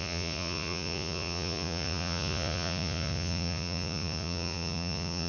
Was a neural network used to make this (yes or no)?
yes